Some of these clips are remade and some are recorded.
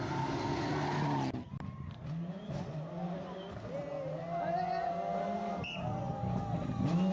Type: recorded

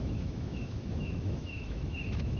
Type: remade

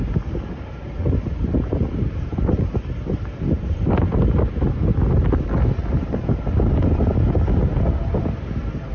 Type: recorded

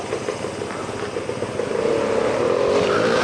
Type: recorded